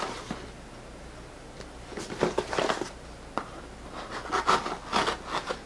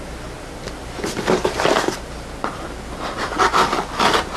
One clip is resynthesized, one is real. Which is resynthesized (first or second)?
second